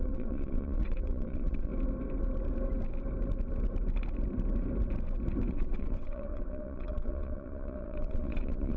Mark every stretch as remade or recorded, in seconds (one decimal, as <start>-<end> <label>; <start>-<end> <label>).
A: 0.0-1.7 remade; 1.7-5.5 recorded; 5.5-8.8 remade